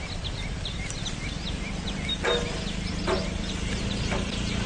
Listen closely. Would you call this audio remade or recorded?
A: recorded